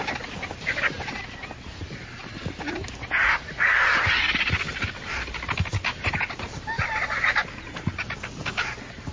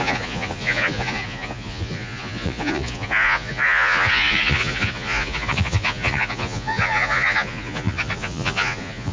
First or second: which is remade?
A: second